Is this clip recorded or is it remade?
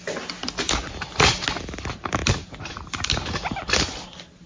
recorded